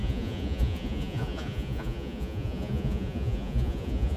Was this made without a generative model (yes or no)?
no